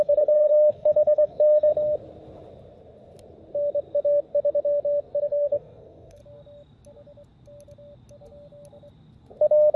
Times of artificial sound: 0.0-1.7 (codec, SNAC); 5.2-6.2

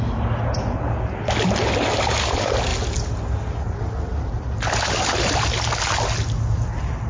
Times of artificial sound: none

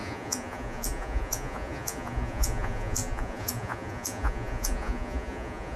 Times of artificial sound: 0.0-5.8 (vocoder, Vocos)

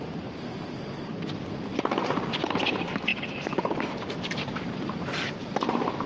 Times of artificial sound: 1.7-2.5 (vocoder, BigVGAN v2); 3.1-6.1

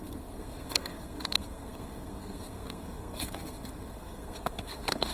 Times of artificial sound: 0.0-5.1 (codec, SNAC)